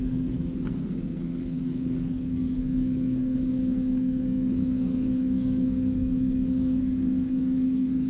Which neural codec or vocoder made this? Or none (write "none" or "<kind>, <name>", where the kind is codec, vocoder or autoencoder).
codec, SNAC